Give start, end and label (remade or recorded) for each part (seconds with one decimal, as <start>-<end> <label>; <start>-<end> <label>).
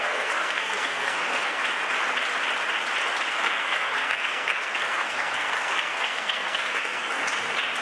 0.0-1.6 remade; 1.6-3.3 recorded; 3.3-7.2 remade; 7.2-7.8 recorded